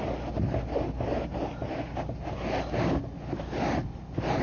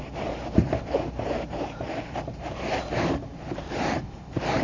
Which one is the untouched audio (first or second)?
first